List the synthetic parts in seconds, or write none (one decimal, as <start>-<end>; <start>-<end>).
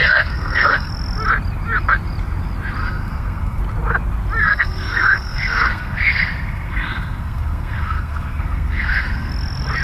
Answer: 0.0-0.9; 2.8-3.6; 4.4-9.3